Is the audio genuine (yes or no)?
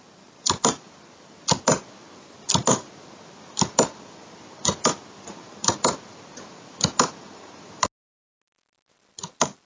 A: yes